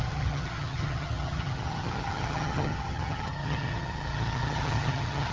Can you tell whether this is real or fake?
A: fake